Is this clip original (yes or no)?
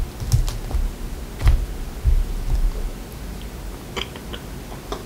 yes